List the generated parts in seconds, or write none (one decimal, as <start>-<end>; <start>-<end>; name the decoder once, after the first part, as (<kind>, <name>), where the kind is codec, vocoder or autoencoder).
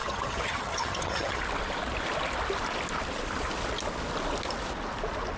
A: 0.0-1.4 (vocoder, HiFi-GAN)